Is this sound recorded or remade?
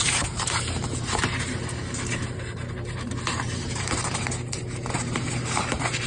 remade